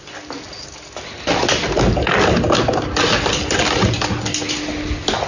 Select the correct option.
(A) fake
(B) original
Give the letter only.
B